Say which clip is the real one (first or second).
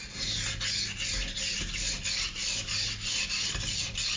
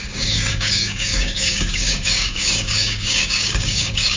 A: first